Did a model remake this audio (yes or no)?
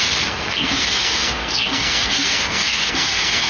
yes